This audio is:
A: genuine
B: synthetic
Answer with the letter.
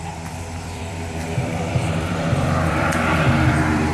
B